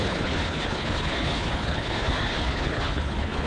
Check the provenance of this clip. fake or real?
fake